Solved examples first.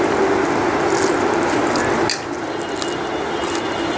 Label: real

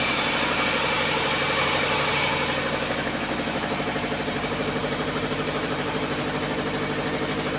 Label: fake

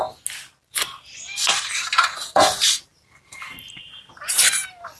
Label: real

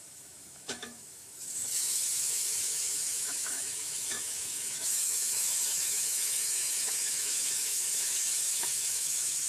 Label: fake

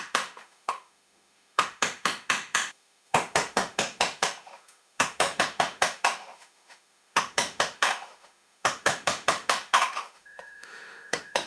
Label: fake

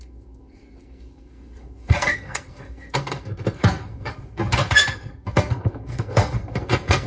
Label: fake